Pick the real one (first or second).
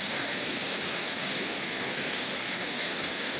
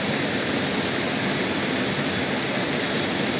second